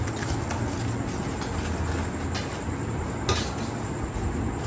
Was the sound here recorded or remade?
recorded